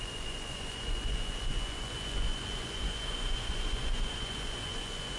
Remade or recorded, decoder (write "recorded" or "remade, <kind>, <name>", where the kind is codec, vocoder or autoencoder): remade, vocoder, Vocos